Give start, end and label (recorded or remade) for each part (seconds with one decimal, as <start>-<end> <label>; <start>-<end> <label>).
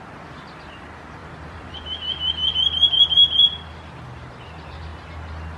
0.0-1.2 recorded; 1.2-1.7 remade; 1.7-5.6 recorded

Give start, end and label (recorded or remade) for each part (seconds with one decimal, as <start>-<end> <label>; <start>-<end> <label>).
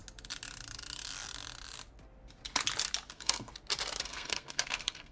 0.0-3.1 recorded; 3.1-3.5 remade; 3.5-4.0 recorded; 4.0-5.1 remade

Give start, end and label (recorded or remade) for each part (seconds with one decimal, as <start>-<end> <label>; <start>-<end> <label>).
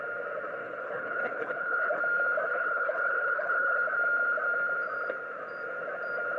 0.0-0.6 recorded; 0.6-2.0 remade; 2.0-2.5 recorded; 2.5-3.8 remade; 3.8-6.4 recorded